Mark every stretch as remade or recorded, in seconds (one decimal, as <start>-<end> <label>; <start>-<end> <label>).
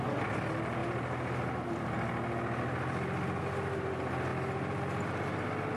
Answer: 0.0-5.8 recorded